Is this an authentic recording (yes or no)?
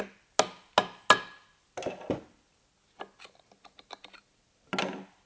yes